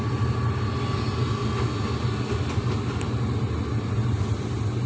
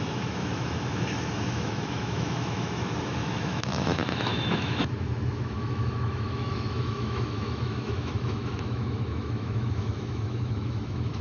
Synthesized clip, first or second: second